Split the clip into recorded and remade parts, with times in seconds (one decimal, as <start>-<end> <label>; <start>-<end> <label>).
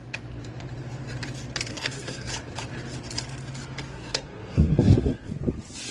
0.0-1.7 recorded; 1.7-2.3 remade; 2.3-3.9 recorded; 3.9-5.4 remade; 5.4-5.9 recorded